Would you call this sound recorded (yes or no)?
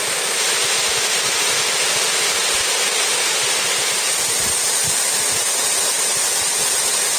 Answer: yes